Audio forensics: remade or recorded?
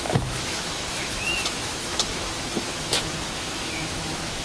remade